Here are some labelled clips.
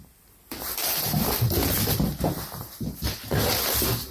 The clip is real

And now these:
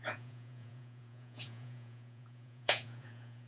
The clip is fake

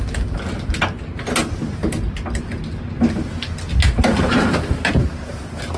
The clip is real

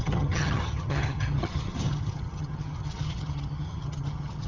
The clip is fake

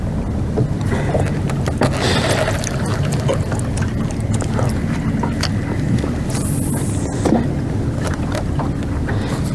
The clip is real